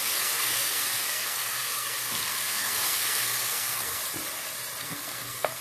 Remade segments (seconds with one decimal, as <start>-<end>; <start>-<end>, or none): 0.0-4.0; 4.8-5.6